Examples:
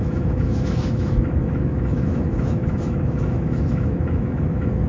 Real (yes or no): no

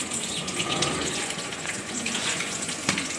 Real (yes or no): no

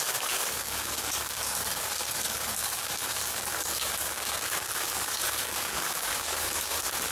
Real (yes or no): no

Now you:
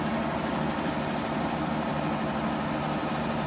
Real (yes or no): yes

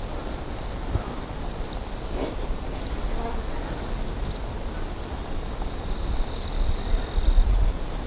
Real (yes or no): yes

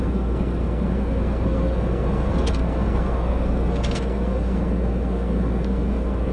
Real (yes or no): no